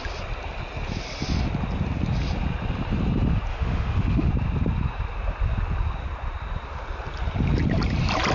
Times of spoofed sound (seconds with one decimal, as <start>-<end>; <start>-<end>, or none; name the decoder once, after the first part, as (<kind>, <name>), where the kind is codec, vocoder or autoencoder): 3.5-4.3 (autoencoder, DAC-VAE)